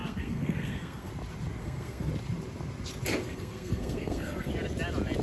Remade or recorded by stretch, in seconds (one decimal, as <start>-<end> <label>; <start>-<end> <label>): 0.0-1.1 remade; 1.1-1.6 recorded; 1.6-2.1 remade; 2.1-3.2 recorded; 3.2-4.5 remade; 4.5-5.2 recorded